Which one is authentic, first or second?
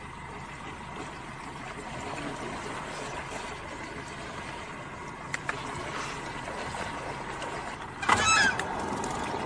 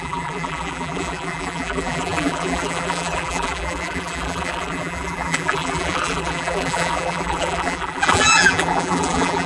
first